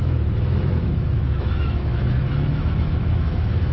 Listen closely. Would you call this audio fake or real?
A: fake